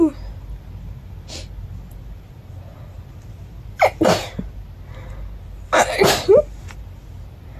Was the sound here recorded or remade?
recorded